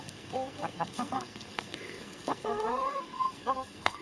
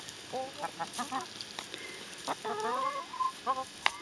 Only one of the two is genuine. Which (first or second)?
second